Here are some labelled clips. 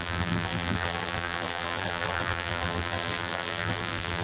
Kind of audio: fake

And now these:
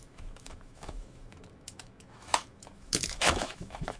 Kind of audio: fake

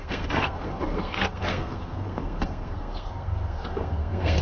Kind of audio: fake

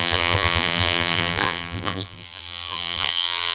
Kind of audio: fake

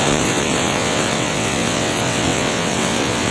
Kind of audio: fake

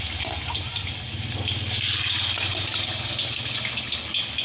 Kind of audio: real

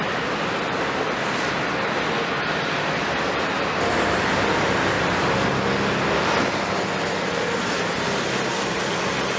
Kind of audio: real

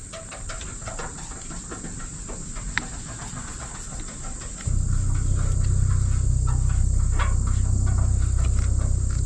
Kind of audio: real